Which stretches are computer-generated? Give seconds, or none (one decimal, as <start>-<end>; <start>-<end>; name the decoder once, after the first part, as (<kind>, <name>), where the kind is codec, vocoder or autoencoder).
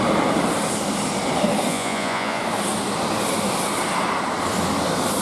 1.7-2.4 (vocoder, Vocos)